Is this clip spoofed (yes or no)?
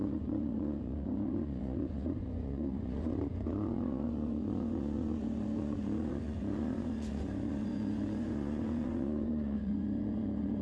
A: yes